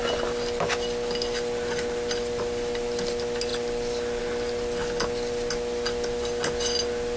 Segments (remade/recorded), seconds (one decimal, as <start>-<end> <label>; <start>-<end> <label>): 0.0-7.2 recorded